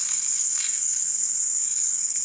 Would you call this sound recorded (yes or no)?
no